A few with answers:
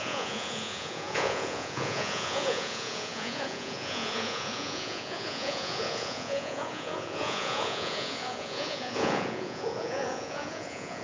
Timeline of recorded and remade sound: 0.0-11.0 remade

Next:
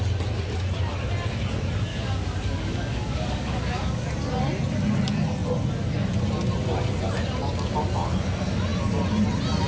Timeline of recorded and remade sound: 0.0-1.9 recorded; 1.9-4.1 remade; 4.1-9.7 recorded